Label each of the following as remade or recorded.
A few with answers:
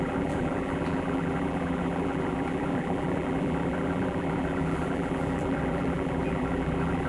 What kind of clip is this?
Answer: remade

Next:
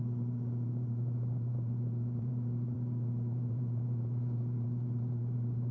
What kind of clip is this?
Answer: remade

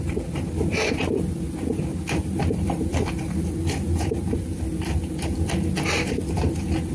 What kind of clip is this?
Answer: remade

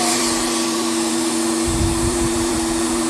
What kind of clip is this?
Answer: remade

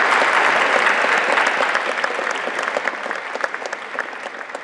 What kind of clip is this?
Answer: recorded